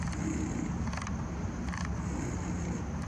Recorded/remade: recorded